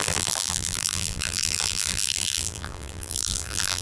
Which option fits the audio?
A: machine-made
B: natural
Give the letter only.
A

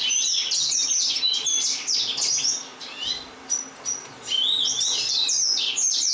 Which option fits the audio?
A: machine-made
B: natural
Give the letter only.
B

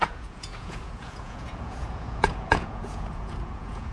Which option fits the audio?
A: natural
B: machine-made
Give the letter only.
B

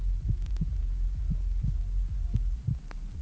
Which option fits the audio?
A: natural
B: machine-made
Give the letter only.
A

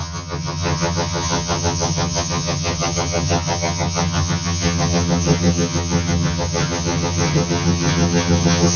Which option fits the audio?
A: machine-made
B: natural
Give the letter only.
A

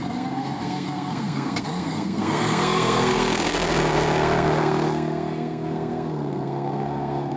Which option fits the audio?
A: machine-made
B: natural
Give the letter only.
A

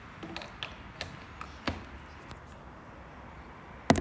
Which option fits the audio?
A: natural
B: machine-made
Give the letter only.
A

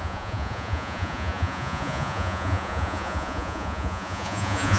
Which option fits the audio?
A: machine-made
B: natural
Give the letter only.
A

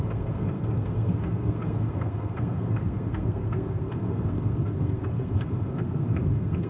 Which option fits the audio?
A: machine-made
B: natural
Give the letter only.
A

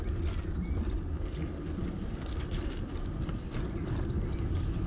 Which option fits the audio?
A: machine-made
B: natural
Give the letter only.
B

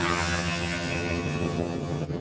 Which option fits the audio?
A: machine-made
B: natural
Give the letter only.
A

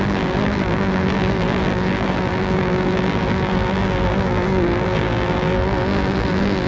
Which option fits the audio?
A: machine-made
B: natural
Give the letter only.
A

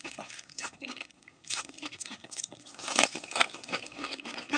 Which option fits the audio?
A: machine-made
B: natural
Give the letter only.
A